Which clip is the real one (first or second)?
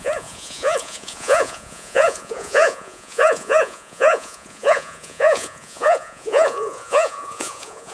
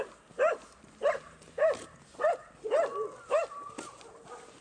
second